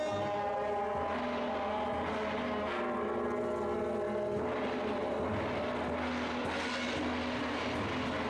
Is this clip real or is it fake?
real